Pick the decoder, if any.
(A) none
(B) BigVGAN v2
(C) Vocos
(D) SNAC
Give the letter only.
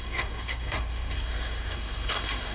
D